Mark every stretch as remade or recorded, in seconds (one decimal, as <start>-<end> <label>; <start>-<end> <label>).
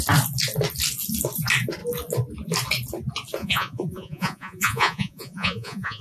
0.0-3.4 recorded; 3.4-6.0 remade